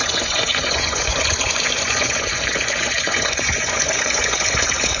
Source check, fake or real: fake